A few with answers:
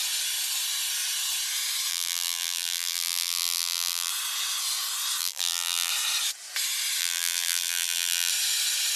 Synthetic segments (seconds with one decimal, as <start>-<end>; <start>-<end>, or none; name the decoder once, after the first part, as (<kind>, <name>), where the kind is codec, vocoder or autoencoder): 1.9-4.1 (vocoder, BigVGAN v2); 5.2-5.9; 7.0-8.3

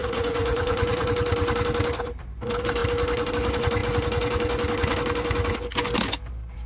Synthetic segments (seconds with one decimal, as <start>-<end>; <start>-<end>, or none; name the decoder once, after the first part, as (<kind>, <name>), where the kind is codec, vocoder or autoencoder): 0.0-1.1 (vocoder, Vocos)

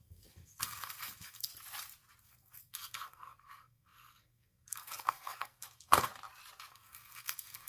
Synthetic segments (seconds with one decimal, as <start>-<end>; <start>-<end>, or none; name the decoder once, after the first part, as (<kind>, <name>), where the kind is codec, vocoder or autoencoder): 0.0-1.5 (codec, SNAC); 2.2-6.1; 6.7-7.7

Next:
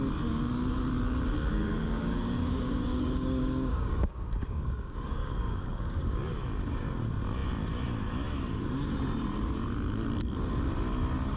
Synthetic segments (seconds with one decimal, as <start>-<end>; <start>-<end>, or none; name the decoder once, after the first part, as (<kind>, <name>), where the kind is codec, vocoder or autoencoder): 1.5-6.3 (codec, DAC)